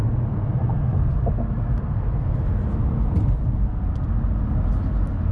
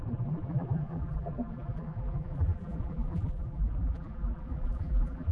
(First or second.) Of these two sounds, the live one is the first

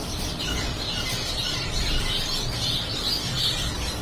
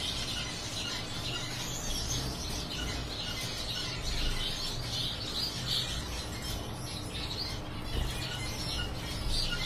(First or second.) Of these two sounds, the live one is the second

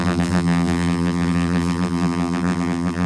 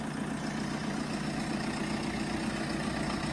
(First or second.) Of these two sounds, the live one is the second